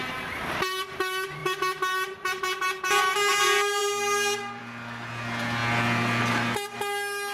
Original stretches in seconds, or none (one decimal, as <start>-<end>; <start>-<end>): 0.0-7.3